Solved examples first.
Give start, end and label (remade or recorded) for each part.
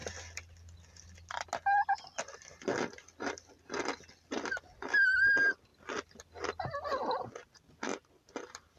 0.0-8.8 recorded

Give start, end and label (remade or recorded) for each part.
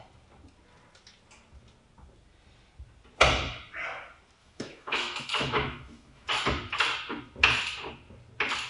0.0-4.4 recorded; 4.4-6.3 remade; 6.3-8.7 recorded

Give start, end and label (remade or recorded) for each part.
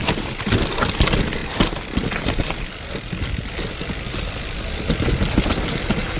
0.0-6.2 recorded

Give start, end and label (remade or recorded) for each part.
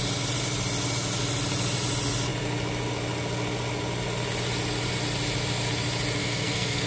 0.0-6.2 recorded; 6.2-6.9 remade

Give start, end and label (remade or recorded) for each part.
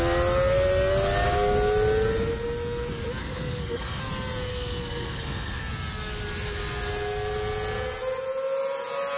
0.0-3.2 recorded; 3.2-4.0 remade; 4.0-4.5 recorded; 4.5-5.6 remade; 5.6-9.2 recorded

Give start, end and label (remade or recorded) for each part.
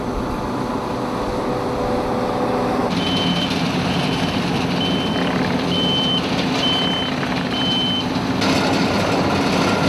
0.0-2.8 recorded; 2.8-4.5 remade; 4.5-9.9 recorded